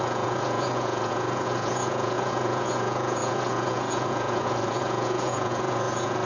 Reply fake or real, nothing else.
fake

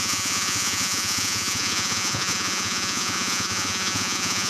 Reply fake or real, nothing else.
fake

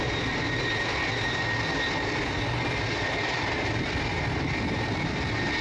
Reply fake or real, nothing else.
real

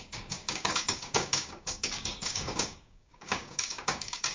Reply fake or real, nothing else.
fake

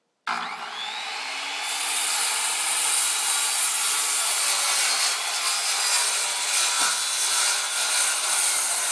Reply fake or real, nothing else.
real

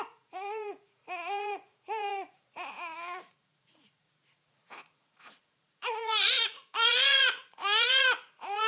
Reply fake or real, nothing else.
fake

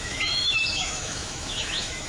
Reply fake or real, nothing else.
fake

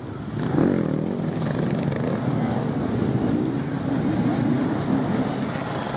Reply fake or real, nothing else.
real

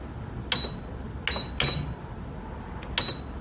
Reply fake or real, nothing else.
real